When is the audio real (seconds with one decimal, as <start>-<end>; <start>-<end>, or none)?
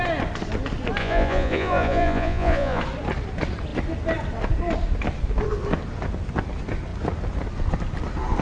0.0-1.0; 2.8-8.4